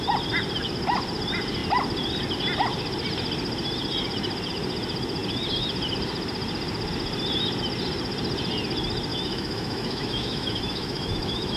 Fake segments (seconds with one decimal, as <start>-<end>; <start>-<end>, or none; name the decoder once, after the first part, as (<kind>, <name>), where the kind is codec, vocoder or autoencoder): 9.1-11.6 (autoencoder, DAC-VAE)